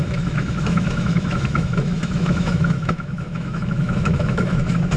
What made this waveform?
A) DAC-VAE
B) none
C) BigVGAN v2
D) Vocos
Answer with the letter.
A